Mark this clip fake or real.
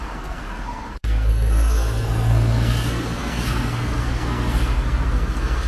fake